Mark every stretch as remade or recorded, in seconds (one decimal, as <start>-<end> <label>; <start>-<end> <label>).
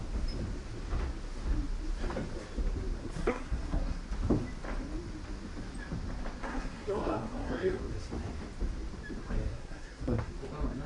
0.0-3.0 recorded; 3.0-4.0 remade; 4.0-6.4 recorded; 6.4-7.8 remade; 7.8-9.5 recorded; 9.5-10.3 remade; 10.3-10.9 recorded